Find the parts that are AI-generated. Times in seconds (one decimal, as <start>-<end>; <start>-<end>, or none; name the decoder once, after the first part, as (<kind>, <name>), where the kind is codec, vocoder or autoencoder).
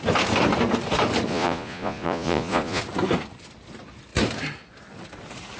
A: 1.3-2.8 (vocoder, Vocos)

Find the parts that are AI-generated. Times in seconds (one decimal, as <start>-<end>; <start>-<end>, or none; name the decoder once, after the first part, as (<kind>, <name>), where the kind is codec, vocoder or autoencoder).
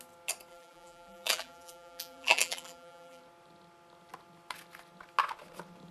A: 0.5-3.2 (vocoder, BigVGAN v2)